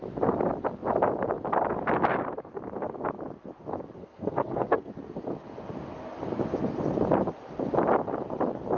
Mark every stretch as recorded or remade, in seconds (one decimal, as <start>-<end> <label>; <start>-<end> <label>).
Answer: 0.0-4.0 recorded; 4.0-4.9 remade; 4.9-8.8 recorded